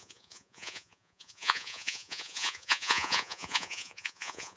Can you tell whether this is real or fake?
fake